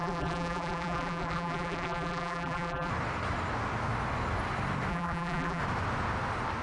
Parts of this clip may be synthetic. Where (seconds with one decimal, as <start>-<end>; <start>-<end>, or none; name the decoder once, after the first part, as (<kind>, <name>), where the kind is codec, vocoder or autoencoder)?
0.0-2.9 (vocoder, BigVGAN v2); 4.9-5.6

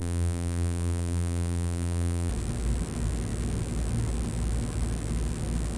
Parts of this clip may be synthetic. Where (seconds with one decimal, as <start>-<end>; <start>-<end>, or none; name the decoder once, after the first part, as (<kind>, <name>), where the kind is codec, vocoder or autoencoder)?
0.0-2.3 (vocoder, BigVGAN v2)

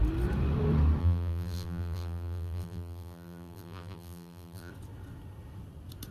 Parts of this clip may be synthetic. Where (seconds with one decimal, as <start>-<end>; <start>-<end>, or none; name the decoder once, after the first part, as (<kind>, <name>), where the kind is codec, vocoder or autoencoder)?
1.0-4.7 (vocoder, BigVGAN v2)

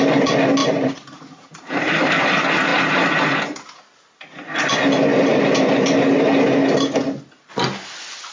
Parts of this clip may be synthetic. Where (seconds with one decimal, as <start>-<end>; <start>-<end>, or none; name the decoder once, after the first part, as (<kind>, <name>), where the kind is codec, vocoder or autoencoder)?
0.6-2.1 (vocoder, BigVGAN v2)

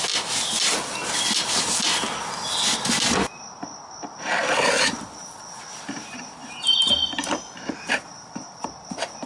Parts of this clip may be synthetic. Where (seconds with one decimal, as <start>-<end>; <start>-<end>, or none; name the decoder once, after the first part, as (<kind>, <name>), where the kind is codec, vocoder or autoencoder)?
6.4-8.9 (vocoder, BigVGAN v2)

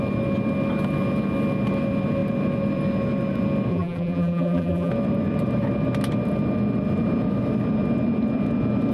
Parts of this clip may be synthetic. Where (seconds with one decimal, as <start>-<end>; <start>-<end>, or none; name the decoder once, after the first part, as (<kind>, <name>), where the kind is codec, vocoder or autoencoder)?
3.7-4.9 (vocoder, BigVGAN v2)

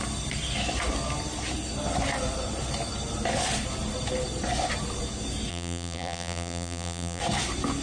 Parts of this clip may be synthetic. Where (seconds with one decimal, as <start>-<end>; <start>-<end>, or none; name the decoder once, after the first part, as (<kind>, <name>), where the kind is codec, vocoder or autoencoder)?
5.5-7.2 (vocoder, BigVGAN v2)